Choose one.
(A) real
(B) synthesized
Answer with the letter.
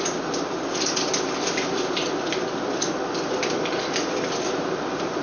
A